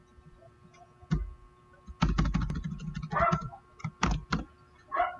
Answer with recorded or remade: recorded